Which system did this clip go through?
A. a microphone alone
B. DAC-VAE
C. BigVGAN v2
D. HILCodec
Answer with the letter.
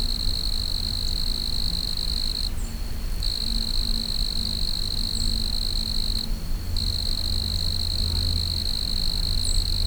A